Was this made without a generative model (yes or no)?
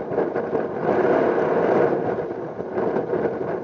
no